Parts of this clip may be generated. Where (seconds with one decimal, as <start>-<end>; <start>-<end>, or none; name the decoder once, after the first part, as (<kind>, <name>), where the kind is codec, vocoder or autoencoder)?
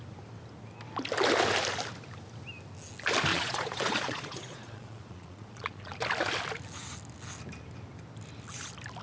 3.3-5.9 (vocoder, Vocos)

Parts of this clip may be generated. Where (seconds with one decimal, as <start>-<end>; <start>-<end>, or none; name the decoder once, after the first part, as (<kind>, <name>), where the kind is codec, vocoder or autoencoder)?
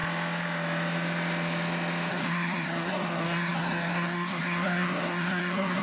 2.1-5.8 (codec, SNAC)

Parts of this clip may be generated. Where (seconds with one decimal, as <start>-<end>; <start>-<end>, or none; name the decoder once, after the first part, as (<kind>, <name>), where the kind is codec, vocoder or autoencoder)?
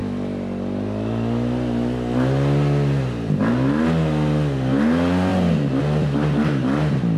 none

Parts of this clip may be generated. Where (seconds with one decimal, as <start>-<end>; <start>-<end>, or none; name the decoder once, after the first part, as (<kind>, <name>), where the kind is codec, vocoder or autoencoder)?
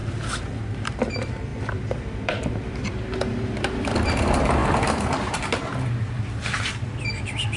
0.0-0.9 (vocoder, BigVGAN v2); 1.5-3.9; 4.6-7.6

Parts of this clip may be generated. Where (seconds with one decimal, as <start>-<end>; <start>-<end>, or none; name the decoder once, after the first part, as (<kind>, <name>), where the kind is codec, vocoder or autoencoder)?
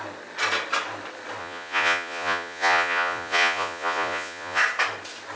1.4-4.6 (vocoder, Vocos)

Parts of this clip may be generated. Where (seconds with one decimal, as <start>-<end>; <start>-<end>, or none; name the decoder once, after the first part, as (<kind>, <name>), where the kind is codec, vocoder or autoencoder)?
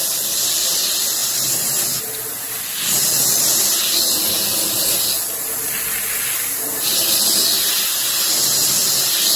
none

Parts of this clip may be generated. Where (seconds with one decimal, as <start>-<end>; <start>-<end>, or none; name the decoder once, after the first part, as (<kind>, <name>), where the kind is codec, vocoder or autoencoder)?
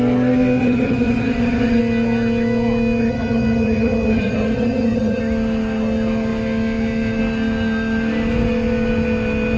0.6-1.8 (vocoder, HiFi-GAN); 3.0-5.2